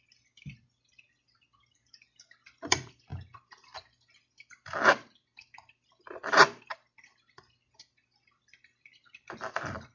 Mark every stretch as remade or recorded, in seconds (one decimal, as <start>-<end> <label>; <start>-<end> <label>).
0.0-9.9 remade